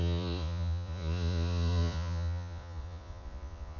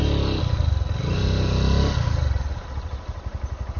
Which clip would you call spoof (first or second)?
first